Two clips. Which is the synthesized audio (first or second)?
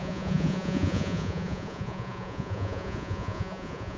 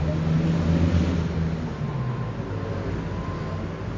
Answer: first